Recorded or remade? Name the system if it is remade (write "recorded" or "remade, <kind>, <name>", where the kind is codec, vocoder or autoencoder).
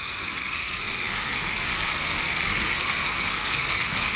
remade, codec, SNAC